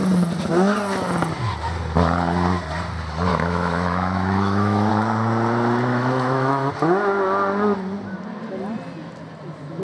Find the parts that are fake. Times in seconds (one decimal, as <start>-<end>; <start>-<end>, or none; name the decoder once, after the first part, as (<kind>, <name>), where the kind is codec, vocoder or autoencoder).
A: 3.3-4.9 (autoencoder, DAC-VAE); 5.9-6.7

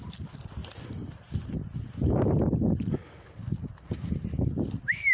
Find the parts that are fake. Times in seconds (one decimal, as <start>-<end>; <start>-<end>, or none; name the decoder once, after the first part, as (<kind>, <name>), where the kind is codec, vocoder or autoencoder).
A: 0.6-3.7 (vocoder, BigVGAN v2)

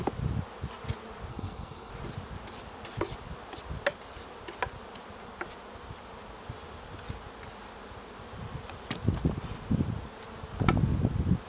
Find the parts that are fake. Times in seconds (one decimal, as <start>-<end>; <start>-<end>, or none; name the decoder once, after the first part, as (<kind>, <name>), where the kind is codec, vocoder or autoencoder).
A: 1.3-1.9 (codec, SNAC)

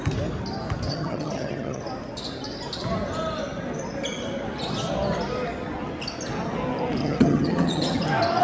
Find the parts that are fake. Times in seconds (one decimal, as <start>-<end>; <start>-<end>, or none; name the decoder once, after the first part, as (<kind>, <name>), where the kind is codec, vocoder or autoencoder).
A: 0.9-1.8 (vocoder, HiFi-GAN); 7.0-8.0

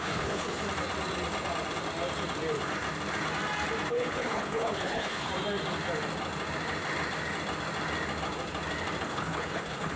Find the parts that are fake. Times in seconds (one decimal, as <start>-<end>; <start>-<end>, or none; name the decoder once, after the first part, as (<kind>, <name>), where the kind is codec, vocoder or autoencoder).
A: 0.0-0.6 (codec, HILCodec); 3.9-5.3; 9.0-10.0

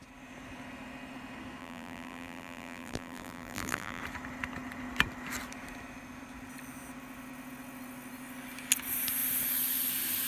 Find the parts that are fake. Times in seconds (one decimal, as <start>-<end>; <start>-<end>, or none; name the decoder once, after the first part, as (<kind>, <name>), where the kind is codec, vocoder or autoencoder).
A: 1.6-4.0 (vocoder, BigVGAN v2)

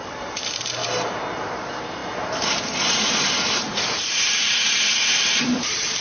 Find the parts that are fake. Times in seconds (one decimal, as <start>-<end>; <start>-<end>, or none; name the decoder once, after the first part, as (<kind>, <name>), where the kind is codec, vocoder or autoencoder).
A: 0.0-0.8 (vocoder, BigVGAN v2); 1.5-6.0